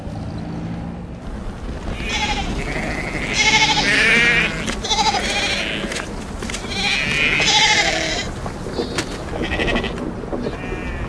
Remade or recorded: recorded